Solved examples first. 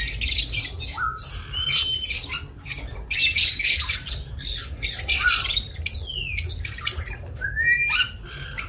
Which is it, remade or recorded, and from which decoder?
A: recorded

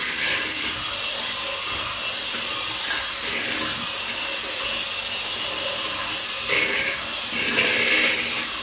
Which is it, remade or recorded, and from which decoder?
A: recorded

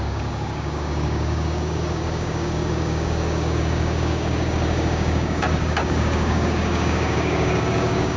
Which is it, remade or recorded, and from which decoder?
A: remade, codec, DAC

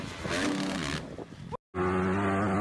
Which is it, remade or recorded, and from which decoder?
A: recorded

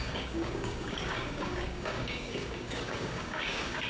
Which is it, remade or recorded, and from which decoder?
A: remade, codec, DAC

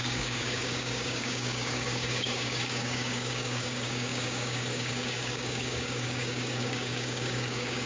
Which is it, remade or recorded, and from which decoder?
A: remade, codec, DAC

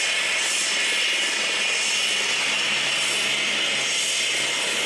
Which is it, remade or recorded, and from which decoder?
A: recorded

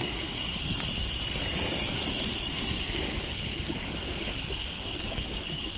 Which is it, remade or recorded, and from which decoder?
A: remade, codec, DAC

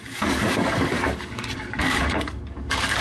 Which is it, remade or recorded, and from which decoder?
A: remade, codec, DAC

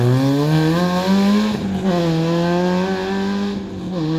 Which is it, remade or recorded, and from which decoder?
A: recorded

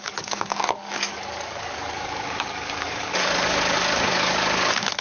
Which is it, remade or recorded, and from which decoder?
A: remade, codec, DAC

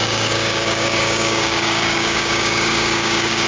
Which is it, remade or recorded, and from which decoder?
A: remade, codec, DAC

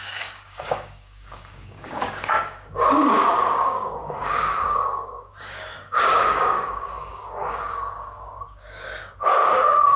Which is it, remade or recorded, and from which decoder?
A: remade, codec, DAC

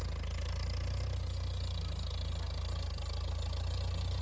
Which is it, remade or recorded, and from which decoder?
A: recorded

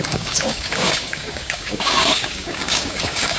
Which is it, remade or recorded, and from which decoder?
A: remade, codec, DAC